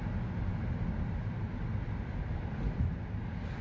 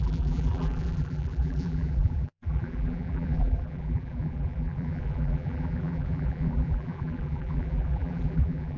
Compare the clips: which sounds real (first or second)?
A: first